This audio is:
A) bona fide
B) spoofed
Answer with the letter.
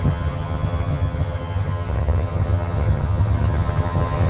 B